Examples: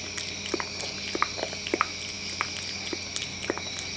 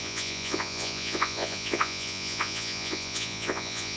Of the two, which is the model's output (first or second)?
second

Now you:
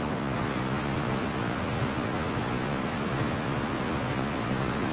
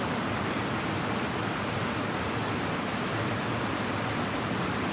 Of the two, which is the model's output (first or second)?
first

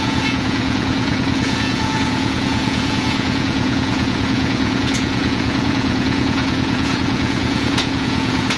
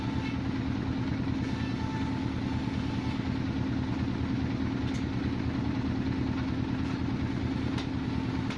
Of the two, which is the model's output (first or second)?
first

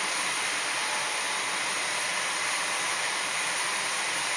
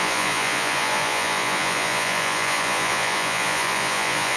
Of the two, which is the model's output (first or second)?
second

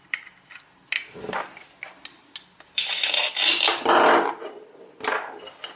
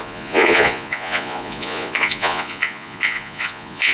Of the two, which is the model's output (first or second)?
second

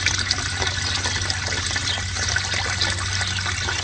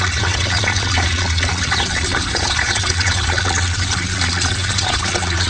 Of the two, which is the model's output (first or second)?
second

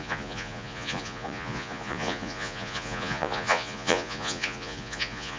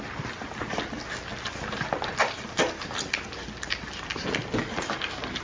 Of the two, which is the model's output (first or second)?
first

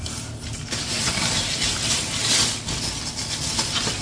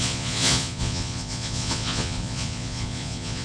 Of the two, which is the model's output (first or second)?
second